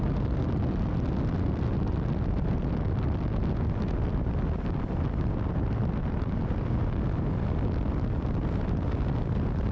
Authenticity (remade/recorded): recorded